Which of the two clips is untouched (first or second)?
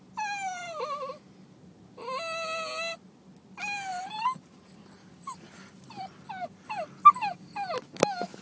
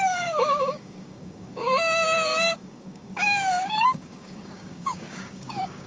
first